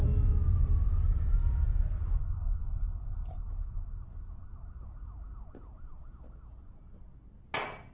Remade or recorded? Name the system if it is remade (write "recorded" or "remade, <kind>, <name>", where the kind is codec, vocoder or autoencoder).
recorded